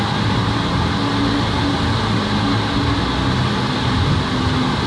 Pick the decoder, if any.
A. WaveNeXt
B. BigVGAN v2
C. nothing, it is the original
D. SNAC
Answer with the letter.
C